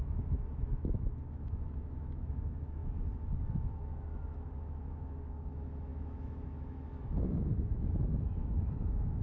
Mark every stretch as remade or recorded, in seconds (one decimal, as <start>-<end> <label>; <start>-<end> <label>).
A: 0.0-2.8 remade; 2.8-3.5 recorded; 3.5-9.2 remade